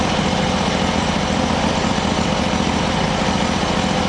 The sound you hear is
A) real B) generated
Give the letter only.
A